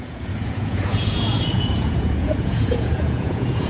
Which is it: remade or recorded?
remade